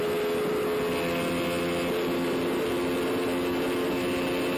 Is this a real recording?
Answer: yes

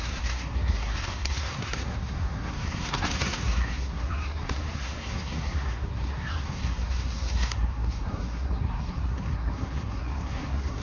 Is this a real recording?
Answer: no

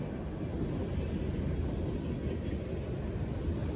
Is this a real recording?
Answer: yes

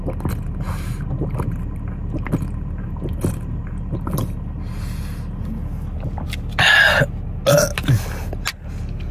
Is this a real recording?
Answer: yes